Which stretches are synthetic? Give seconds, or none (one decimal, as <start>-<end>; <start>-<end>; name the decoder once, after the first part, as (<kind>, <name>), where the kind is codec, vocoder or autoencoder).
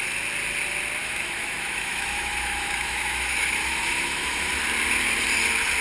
1.0-4.5 (autoencoder, DAC-VAE)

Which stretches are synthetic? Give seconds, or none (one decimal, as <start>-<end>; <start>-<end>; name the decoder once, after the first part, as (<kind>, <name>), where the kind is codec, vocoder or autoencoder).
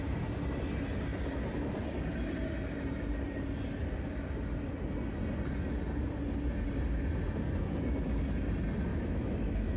8.9-9.8 (autoencoder, DAC-VAE)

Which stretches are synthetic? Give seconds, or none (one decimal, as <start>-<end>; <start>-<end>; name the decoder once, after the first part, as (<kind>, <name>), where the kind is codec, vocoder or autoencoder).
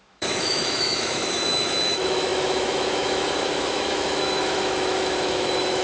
0.0-5.8 (autoencoder, DAC-VAE)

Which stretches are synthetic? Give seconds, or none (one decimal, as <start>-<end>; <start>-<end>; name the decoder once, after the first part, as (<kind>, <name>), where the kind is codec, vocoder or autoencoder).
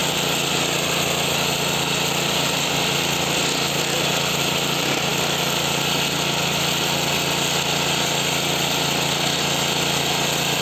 none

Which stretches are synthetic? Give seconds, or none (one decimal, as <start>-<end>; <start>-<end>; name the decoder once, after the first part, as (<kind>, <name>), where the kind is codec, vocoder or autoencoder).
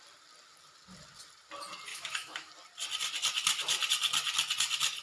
1.9-2.5 (autoencoder, DAC-VAE)